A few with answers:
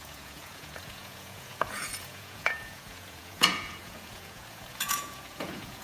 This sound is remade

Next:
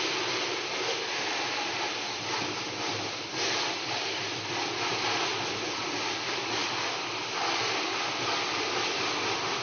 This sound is recorded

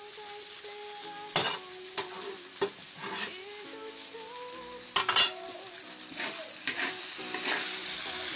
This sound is recorded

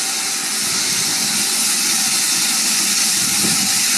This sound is remade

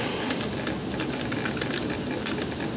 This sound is recorded